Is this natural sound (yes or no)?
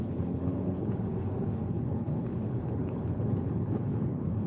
no